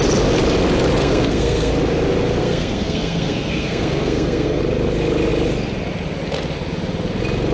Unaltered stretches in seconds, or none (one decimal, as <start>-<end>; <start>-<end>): 0.0-1.0; 1.7-2.4; 4.6-7.5

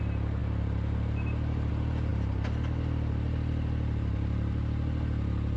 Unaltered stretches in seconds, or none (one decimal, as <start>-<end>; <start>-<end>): 0.0-5.6

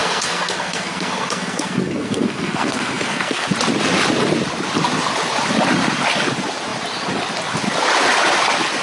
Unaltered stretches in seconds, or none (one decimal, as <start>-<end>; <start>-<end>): 3.5-8.8

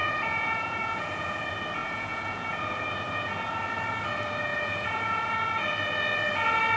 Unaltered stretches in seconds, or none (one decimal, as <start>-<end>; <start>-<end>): 1.4-1.8; 2.6-4.5; 5.3-6.8